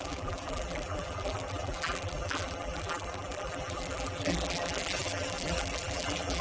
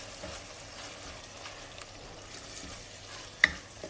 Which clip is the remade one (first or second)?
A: first